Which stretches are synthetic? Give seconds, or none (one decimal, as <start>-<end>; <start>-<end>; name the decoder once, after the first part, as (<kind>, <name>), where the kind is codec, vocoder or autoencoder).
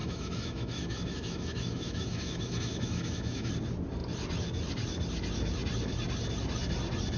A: 0.0-3.5 (autoencoder, DAC-VAE)